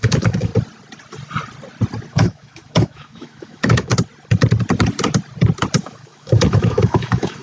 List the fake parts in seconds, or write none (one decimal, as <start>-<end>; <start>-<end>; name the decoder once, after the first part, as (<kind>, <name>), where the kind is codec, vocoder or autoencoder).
0.0-0.5 (autoencoder, DAC-VAE); 2.1-3.9; 5.8-7.4